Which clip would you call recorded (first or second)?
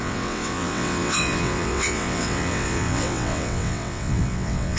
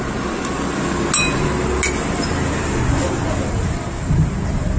second